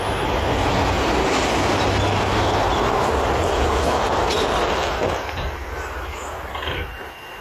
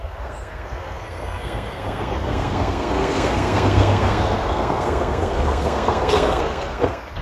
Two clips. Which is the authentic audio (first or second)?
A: first